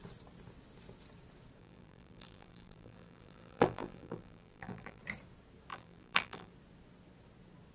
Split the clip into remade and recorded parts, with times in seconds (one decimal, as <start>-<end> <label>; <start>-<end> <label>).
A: 0.0-1.6 recorded; 1.6-5.0 remade; 5.0-5.7 recorded; 5.7-6.5 remade; 6.5-7.7 recorded